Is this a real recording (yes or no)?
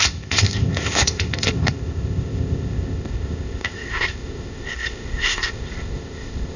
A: no